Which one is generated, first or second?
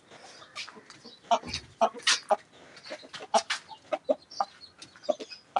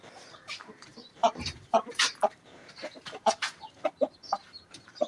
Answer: second